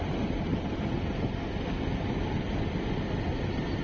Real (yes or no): yes